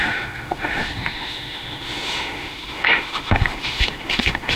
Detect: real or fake fake